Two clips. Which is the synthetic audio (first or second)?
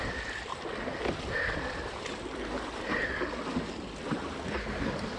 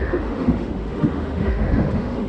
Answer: second